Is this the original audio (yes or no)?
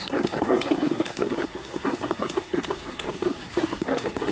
no